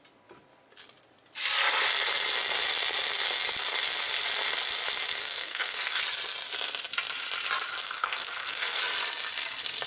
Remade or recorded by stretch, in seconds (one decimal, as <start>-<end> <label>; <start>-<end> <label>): 0.0-5.2 recorded; 5.2-6.0 remade; 6.0-7.8 recorded; 7.8-8.8 remade; 8.8-9.9 recorded